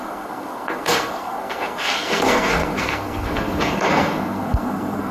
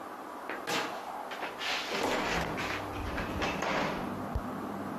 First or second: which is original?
second